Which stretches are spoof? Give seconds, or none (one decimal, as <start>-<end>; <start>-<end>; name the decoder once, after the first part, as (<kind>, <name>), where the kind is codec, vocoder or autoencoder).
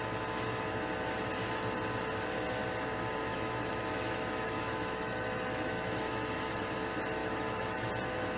3.3-6.6 (autoencoder, DAC-VAE); 7.2-7.9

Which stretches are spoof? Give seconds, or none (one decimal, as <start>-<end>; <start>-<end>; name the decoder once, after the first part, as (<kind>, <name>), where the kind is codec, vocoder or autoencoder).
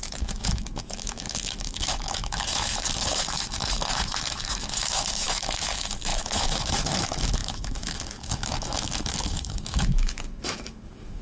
0.0-11.2 (autoencoder, DAC-VAE)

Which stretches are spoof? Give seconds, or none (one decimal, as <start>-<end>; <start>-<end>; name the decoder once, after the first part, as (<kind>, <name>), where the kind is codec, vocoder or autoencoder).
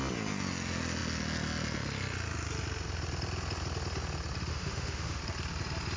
4.5-5.2 (autoencoder, DAC-VAE)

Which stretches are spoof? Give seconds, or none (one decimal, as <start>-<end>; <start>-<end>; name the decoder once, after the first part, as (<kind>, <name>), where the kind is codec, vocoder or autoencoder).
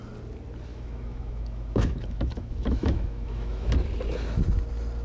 0.7-3.7 (autoencoder, DAC-VAE)